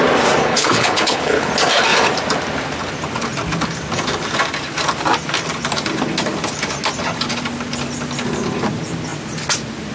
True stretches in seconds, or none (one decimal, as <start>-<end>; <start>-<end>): 0.0-0.4; 1.5-9.9